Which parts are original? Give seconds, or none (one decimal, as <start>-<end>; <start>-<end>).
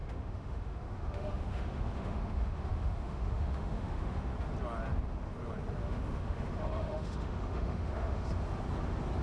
4.2-5.8; 8.3-9.2